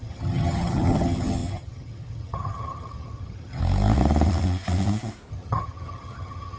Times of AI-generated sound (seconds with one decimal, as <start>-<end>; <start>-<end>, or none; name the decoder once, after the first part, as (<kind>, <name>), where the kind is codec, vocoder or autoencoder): 0.0-3.6 (vocoder, HiFi-GAN); 5.3-6.6